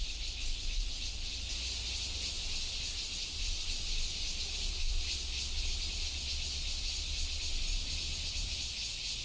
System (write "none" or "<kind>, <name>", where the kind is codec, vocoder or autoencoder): none